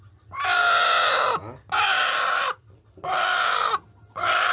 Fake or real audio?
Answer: real